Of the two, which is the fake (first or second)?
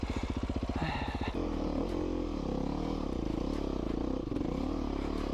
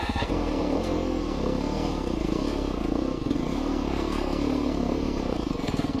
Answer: second